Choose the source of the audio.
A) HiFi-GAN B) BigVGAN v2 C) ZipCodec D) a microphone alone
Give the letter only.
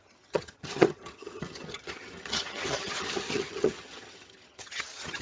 A